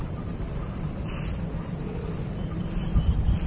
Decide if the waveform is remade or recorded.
remade